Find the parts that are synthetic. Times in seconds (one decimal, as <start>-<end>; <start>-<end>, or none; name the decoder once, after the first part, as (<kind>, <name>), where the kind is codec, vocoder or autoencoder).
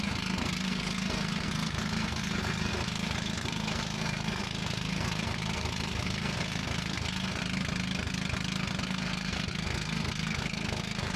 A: 0.0-7.4 (codec, SNAC); 8.8-11.2